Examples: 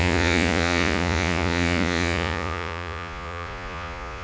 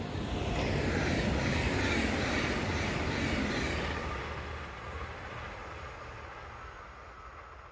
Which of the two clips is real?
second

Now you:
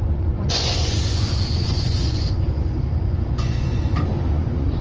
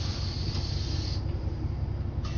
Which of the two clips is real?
second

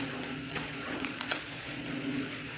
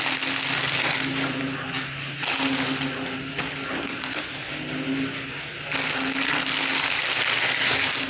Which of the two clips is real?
second